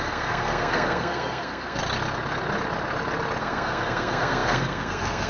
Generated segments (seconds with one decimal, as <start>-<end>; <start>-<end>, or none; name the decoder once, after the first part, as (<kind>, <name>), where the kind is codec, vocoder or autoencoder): 0.0-1.8 (codec, SNAC); 3.4-5.3